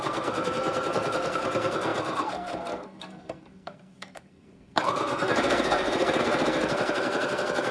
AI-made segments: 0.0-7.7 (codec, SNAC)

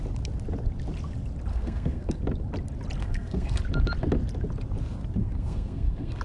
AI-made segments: 1.5-2.2 (codec, SNAC); 3.0-3.6; 5.2-6.2

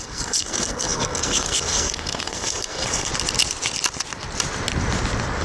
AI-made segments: 0.0-3.1 (codec, SNAC)

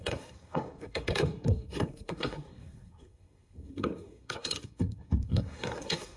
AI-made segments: 0.0-6.2 (codec, SNAC)

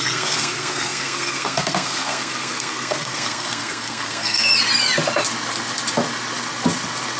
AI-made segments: 0.0-4.5 (codec, SNAC)